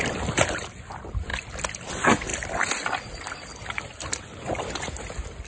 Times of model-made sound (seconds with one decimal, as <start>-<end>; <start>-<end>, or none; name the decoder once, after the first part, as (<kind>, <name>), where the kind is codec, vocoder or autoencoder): 0.0-1.3 (vocoder, BigVGAN v2); 1.9-2.3; 4.6-5.5